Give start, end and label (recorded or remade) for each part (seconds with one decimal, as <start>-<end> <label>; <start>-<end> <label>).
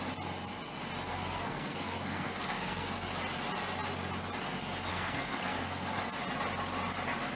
0.0-1.1 recorded; 1.1-3.1 remade; 3.1-4.9 recorded; 4.9-6.0 remade; 6.0-7.4 recorded